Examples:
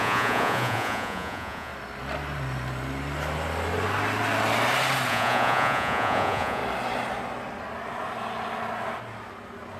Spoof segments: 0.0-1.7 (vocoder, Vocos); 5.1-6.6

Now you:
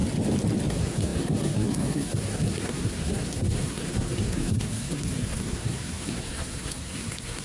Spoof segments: 0.7-7.4 (codec, SNAC)

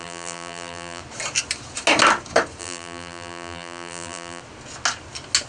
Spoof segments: 0.0-1.0 (vocoder, BigVGAN v2); 2.6-4.4